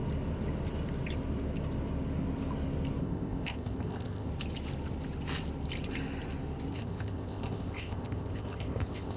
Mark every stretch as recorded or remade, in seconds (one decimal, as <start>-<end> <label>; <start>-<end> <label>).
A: 0.0-3.0 recorded; 3.0-4.3 remade; 4.3-6.7 recorded; 6.7-9.2 remade